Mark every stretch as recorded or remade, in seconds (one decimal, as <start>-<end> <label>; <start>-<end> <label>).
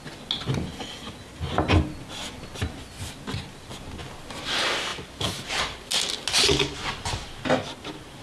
0.0-8.2 recorded